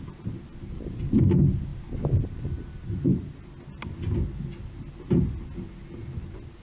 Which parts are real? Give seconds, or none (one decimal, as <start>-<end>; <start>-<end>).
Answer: 0.0-6.6